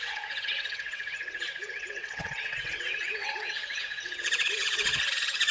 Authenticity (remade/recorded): remade